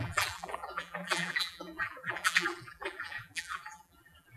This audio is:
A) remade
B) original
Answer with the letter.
A